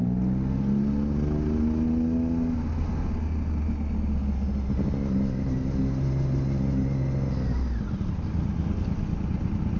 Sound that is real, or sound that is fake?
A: real